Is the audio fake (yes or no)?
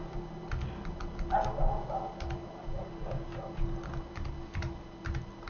no